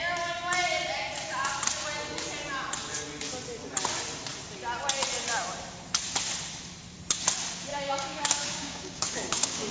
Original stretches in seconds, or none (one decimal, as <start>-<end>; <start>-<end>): 0.0-7.7